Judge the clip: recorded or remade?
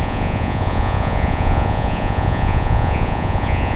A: remade